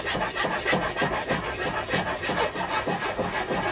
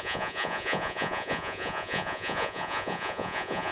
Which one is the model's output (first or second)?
second